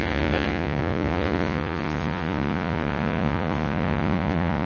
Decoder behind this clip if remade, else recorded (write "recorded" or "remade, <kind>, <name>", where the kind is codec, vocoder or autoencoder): remade, vocoder, Vocos